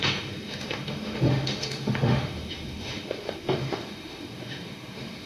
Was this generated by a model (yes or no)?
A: yes